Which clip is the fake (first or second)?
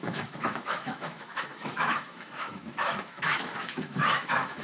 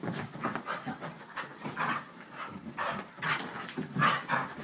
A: first